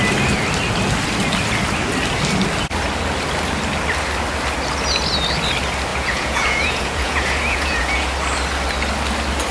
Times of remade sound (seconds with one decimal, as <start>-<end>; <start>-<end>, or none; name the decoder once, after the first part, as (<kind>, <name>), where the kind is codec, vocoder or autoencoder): 5.9-8.1 (vocoder, Vocos)